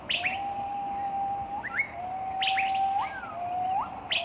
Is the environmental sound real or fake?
real